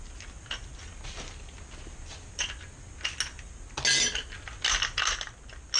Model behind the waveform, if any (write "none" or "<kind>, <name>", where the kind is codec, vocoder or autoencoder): none